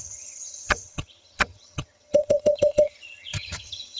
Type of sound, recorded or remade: remade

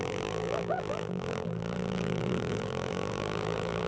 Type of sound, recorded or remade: remade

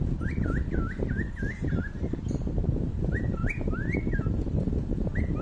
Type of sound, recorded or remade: remade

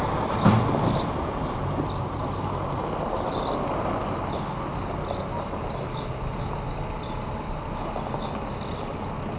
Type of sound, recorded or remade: recorded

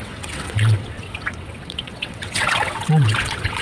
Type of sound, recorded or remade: remade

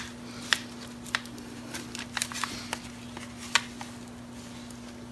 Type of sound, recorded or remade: recorded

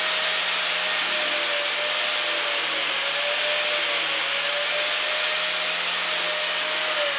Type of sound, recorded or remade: recorded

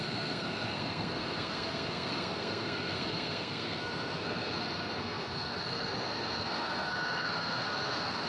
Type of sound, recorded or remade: remade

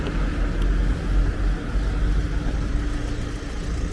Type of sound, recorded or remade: recorded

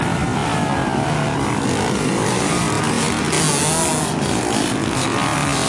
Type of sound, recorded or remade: recorded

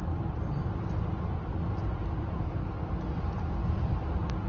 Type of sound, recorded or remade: recorded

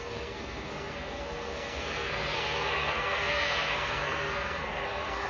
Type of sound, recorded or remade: remade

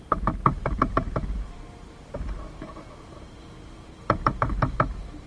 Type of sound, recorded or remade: remade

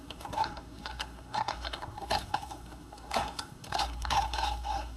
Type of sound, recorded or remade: remade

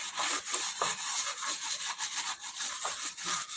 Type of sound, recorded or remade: remade